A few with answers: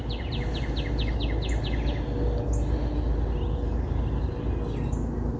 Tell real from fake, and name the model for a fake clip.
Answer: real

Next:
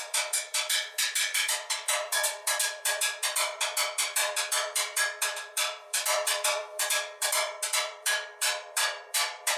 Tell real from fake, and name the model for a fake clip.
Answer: fake, vocoder, BigVGAN v2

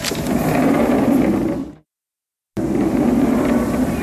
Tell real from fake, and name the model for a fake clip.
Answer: real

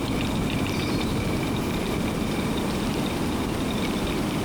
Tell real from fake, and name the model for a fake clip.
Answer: fake, vocoder, BigVGAN v2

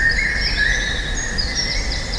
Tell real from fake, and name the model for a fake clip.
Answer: real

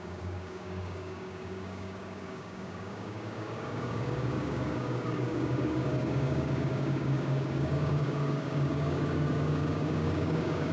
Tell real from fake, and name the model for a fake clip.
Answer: fake, codec, DAC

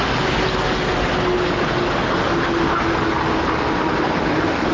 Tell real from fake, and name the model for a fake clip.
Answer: real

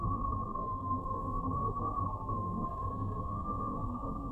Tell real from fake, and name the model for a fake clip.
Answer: fake, codec, SNAC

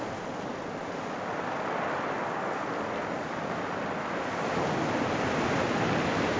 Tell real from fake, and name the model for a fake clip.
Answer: real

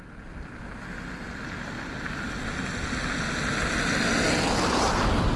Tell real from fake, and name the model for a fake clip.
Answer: real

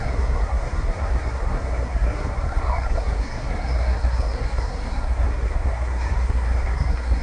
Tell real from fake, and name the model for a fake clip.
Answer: fake, codec, SNAC